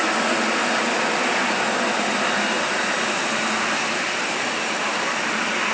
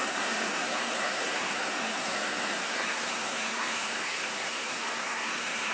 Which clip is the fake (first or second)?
second